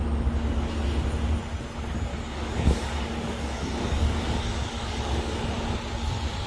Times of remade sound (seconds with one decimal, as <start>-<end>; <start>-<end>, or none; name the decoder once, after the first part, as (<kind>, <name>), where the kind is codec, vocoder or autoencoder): 2.1-5.4 (codec, DAC)